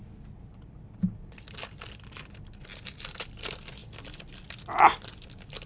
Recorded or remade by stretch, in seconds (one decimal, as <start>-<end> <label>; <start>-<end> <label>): 0.0-5.7 recorded